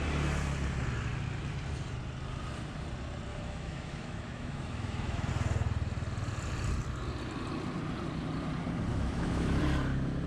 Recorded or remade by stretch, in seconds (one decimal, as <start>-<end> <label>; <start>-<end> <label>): 0.0-3.3 recorded; 3.3-5.3 remade; 5.3-8.9 recorded; 8.9-9.6 remade; 9.6-10.3 recorded